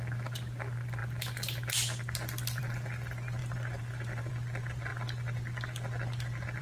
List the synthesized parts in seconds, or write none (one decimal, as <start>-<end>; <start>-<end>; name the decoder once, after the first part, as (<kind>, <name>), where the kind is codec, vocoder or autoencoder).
3.4-4.3 (vocoder, BigVGAN v2)